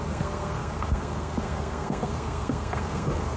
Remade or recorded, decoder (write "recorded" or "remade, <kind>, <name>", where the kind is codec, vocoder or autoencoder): remade, codec, SNAC